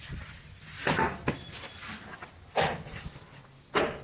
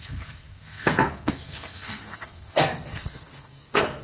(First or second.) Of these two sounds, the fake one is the second